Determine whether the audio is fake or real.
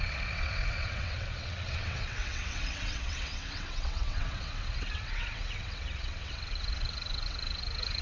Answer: fake